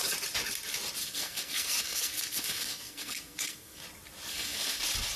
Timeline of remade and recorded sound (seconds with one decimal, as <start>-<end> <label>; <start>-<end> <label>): 0.0-1.0 recorded; 1.0-3.8 remade; 3.8-4.3 recorded; 4.3-4.8 remade; 4.8-5.2 recorded